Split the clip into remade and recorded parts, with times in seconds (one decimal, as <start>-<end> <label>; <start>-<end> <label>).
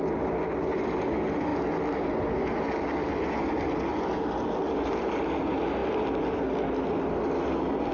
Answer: 0.0-7.9 recorded